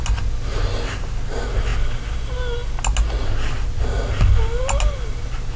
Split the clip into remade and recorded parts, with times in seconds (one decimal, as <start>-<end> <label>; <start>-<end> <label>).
0.0-5.6 recorded